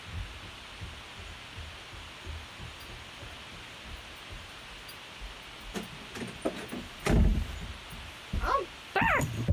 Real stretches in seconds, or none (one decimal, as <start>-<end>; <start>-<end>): 0.0-9.5